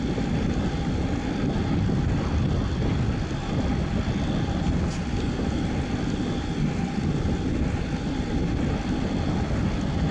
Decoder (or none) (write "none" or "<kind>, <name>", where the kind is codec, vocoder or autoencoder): none